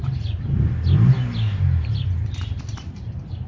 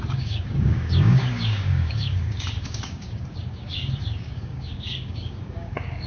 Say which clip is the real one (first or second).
first